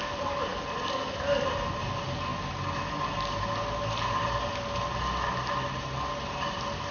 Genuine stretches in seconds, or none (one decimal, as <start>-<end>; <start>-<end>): 0.0-6.9